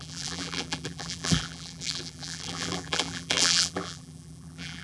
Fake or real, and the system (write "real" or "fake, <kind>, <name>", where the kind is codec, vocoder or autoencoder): fake, vocoder, BigVGAN v2